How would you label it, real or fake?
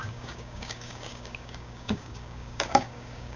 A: fake